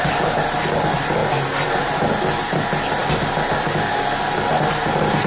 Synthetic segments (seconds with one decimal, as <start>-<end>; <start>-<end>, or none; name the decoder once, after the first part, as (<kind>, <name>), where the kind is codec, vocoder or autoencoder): none